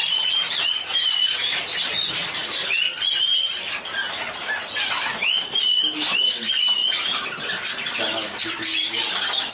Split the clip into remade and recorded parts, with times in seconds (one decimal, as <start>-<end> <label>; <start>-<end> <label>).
0.0-9.5 recorded